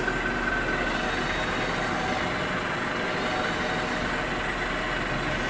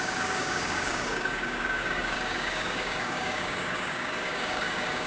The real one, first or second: first